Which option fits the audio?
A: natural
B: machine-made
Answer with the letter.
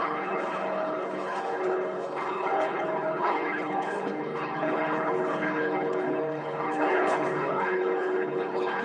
B